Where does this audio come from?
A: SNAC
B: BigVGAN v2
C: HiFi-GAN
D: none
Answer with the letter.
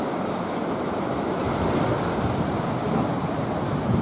D